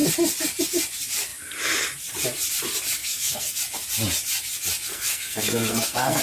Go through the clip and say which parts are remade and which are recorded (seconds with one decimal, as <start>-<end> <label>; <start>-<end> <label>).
0.0-3.0 recorded; 3.0-3.6 remade; 3.6-4.9 recorded; 4.9-6.2 remade